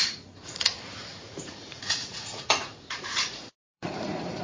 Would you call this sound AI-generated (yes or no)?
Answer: yes